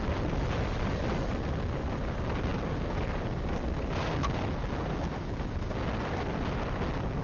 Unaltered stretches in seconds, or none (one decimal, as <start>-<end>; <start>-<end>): 0.0-7.2